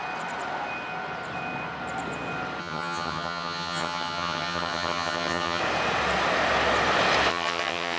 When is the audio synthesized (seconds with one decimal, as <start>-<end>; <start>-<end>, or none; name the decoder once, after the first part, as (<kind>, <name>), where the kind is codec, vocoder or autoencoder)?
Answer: 2.6-5.6 (vocoder, HiFi-GAN); 7.3-8.0